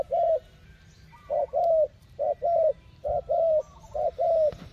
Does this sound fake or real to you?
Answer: fake